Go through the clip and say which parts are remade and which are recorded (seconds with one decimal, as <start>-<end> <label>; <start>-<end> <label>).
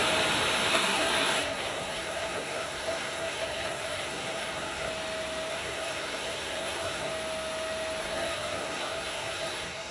0.0-0.7 recorded; 0.7-4.9 remade; 4.9-5.5 recorded; 5.5-7.1 remade; 7.1-8.0 recorded; 8.0-9.9 remade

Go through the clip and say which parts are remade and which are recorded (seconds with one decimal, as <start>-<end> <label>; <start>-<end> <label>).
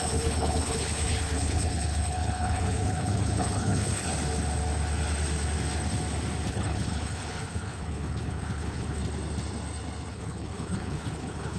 0.0-4.1 remade; 4.1-6.5 recorded; 6.5-9.0 remade; 9.0-10.1 recorded; 10.1-11.6 remade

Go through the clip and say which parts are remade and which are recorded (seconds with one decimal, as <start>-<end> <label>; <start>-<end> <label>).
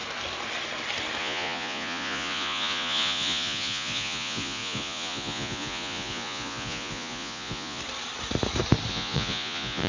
0.0-1.2 recorded; 1.2-7.8 remade; 7.8-8.9 recorded; 8.9-9.9 remade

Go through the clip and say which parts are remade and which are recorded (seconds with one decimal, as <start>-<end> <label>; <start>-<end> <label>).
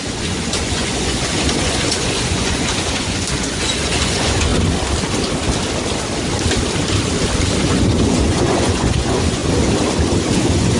0.0-4.5 remade; 4.5-7.6 recorded; 7.6-9.4 remade; 9.4-10.3 recorded; 10.3-10.8 remade